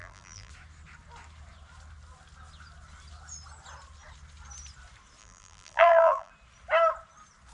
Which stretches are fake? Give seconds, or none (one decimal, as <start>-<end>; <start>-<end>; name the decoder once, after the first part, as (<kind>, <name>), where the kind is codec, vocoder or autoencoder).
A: 0.0-0.5 (vocoder, BigVGAN v2); 5.2-6.3